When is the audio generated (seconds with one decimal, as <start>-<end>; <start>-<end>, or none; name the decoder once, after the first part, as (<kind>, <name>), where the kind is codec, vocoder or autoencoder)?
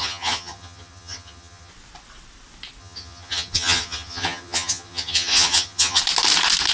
0.0-1.7 (vocoder, HiFi-GAN); 2.8-6.0